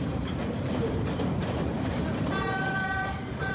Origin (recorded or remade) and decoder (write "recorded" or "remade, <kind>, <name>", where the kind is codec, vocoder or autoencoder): remade, vocoder, BigVGAN v2